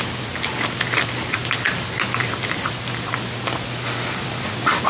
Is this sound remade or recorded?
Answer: recorded